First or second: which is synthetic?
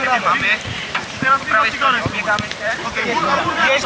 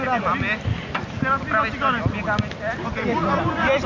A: first